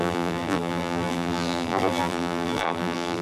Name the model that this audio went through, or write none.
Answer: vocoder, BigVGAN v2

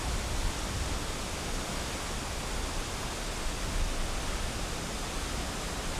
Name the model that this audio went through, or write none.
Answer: none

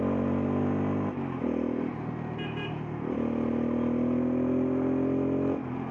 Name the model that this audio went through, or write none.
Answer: none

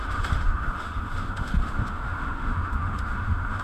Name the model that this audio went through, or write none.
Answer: autoencoder, DAC-VAE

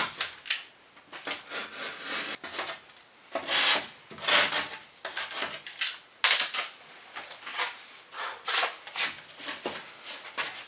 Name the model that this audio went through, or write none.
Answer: none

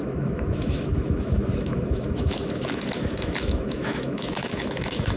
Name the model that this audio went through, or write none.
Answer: autoencoder, DAC-VAE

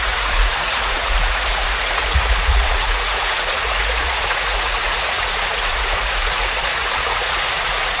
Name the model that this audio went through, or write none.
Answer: vocoder, Vocos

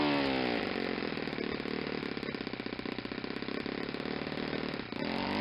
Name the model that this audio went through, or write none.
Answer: none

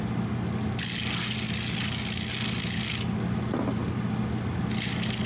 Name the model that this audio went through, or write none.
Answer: none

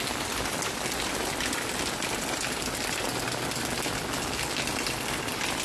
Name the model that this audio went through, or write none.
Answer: none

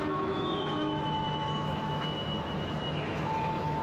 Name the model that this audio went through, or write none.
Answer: autoencoder, DAC-VAE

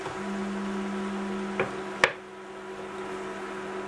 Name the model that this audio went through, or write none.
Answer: none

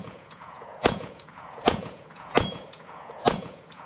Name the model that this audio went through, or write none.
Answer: vocoder, Vocos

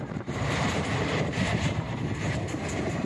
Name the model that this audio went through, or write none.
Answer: vocoder, BigVGAN v2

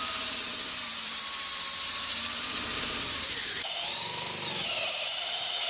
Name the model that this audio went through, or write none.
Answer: vocoder, BigVGAN v2